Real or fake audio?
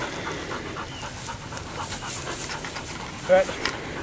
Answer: real